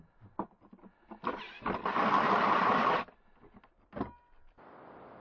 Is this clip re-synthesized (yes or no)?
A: no